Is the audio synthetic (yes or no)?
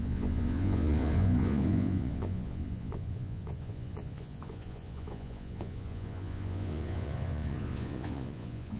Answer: yes